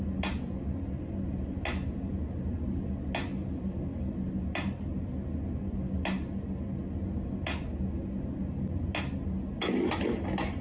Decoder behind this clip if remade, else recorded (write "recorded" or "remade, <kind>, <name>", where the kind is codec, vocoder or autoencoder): recorded